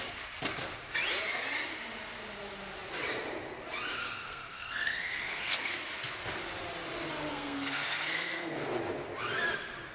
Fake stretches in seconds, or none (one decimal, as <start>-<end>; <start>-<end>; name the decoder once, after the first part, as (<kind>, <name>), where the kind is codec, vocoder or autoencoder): 4.0-5.8 (codec, SNAC); 7.3-8.6